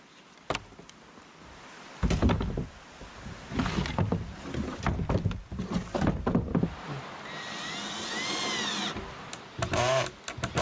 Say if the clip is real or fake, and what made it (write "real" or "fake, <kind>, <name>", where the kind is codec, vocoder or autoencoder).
real